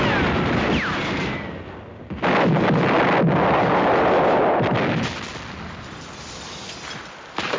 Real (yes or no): yes